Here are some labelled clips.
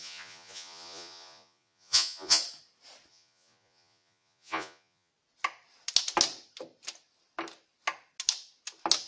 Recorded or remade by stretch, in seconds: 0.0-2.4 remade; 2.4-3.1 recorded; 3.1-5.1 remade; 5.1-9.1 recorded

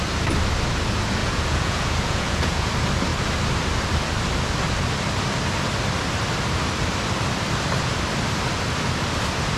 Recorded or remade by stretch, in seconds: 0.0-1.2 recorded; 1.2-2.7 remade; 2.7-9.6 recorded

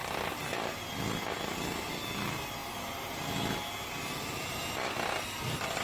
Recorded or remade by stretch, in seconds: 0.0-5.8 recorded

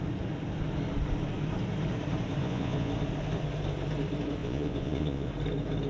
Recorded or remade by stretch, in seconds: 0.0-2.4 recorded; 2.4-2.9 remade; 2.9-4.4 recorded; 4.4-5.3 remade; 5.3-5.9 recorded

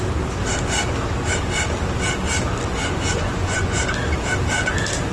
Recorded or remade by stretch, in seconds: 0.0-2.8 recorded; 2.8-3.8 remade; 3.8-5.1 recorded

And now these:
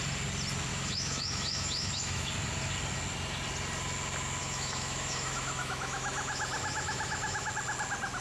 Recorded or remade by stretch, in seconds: 0.0-0.7 recorded; 0.7-2.3 remade; 2.3-4.4 recorded; 4.4-7.5 remade; 7.5-8.2 recorded

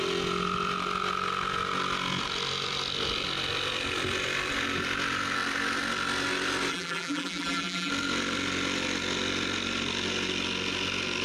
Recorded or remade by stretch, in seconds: 0.0-6.7 recorded; 6.7-7.9 remade; 7.9-11.2 recorded